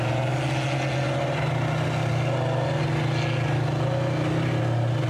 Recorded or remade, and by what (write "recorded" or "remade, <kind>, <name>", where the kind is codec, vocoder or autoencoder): recorded